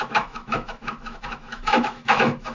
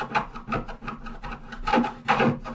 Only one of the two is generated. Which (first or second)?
first